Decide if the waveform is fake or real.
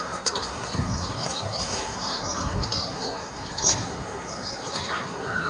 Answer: fake